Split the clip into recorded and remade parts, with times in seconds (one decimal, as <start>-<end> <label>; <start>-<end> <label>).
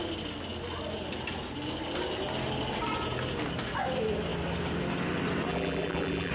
0.0-5.5 recorded; 5.5-6.3 remade